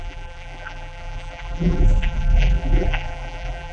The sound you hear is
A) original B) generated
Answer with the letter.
B